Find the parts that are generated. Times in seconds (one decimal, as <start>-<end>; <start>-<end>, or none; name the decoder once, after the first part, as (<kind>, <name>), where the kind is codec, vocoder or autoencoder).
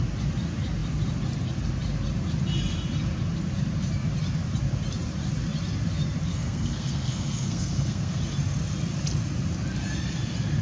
6.3-8.2 (codec, SNAC)